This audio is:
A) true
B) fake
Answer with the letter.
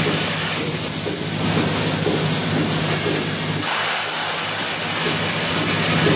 A